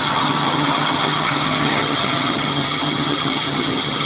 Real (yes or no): no